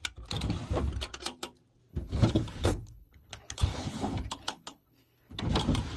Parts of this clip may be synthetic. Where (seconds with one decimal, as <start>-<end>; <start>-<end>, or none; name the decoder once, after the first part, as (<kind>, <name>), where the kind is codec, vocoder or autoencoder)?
1.9-5.4 (codec, HILCodec)